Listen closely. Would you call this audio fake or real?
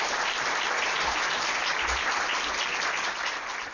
real